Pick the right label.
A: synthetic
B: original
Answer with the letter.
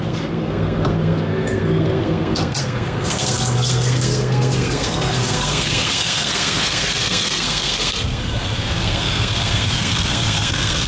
A